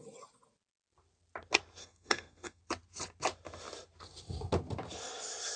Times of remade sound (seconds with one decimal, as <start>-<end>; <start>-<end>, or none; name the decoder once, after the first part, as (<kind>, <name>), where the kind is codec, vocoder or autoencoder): 1.8-2.6 (codec, SNAC)